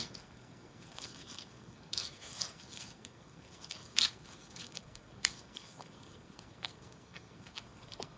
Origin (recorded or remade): remade